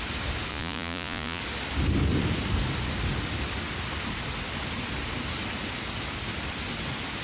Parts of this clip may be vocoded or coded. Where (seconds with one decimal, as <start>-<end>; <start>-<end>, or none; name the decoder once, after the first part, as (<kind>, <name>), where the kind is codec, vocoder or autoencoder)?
0.5-1.4 (vocoder, Vocos)